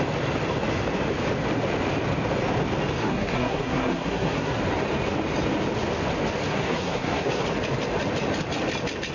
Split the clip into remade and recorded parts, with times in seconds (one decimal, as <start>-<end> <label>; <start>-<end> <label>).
0.0-3.0 recorded; 3.0-4.6 remade; 4.6-6.5 recorded; 6.5-7.4 remade; 7.4-9.1 recorded